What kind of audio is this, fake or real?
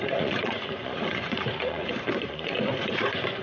fake